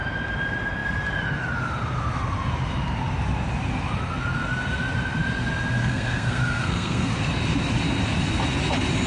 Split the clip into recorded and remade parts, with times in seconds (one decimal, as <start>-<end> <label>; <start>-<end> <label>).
0.0-5.8 recorded; 5.8-7.1 remade; 7.1-9.1 recorded